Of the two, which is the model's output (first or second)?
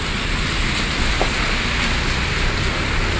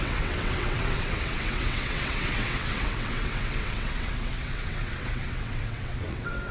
second